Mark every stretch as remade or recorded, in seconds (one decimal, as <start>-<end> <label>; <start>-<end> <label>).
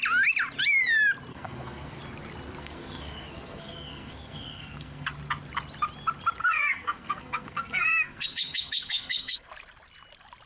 0.0-1.3 recorded; 1.3-2.0 remade; 2.0-2.6 recorded; 2.6-5.1 remade; 5.1-6.4 recorded; 6.4-9.5 remade; 9.5-10.5 recorded